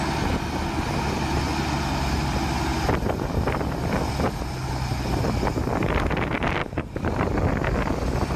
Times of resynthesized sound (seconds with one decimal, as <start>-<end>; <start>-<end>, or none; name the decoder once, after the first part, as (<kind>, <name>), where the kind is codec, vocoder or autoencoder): 6.6-7.3 (vocoder, BigVGAN v2)